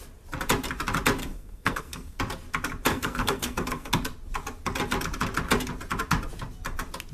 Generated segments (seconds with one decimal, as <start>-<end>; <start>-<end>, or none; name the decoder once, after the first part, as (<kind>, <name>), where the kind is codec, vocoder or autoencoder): 1.2-2.2 (codec, SNAC); 2.9-3.9